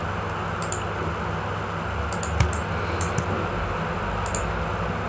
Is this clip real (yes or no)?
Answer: yes